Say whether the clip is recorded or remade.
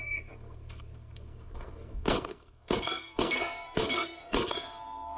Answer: remade